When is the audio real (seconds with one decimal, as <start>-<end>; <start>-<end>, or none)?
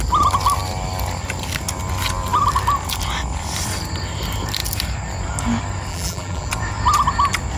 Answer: 0.0-5.9; 6.5-7.6